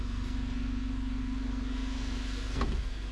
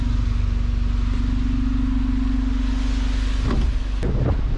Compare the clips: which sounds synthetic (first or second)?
first